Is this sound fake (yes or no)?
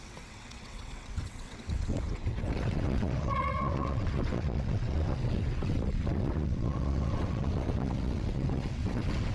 yes